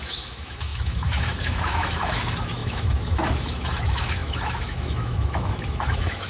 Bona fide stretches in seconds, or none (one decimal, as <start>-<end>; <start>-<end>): none